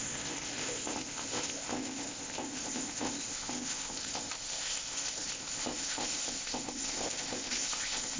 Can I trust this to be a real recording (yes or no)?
no